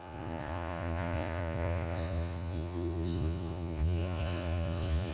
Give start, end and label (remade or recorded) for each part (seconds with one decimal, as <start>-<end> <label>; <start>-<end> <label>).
0.0-5.1 remade